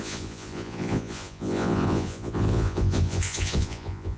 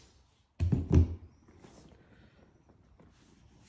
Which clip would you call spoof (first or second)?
first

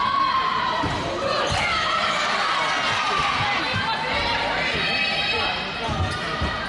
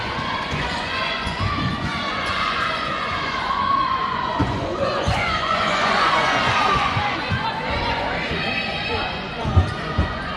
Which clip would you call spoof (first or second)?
second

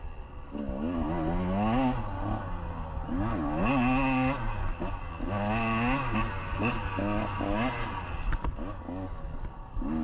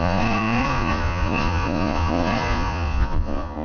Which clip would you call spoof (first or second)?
second